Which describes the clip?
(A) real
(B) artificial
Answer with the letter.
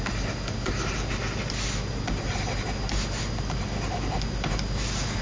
A